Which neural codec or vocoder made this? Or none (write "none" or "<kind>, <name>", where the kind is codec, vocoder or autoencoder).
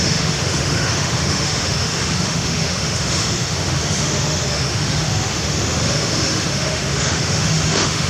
autoencoder, DAC-VAE